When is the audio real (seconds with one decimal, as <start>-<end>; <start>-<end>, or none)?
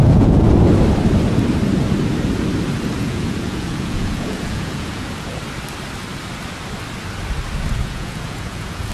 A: 0.5-3.0; 5.4-7.8